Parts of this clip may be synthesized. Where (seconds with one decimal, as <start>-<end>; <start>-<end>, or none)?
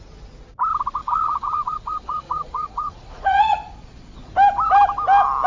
1.0-4.3